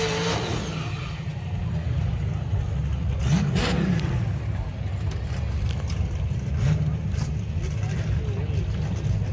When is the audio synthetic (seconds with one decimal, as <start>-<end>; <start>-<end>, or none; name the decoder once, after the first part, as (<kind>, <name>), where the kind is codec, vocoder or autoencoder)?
none